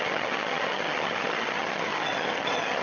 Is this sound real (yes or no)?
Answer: no